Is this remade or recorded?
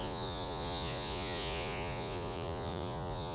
remade